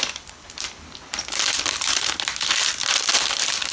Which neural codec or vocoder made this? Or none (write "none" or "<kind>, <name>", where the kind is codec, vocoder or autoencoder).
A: vocoder, BigVGAN v2